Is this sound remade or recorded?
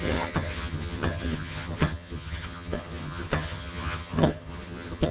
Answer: remade